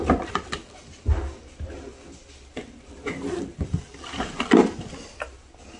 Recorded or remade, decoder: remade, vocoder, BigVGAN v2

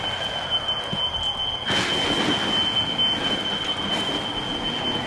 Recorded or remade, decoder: recorded